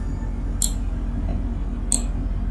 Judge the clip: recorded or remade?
recorded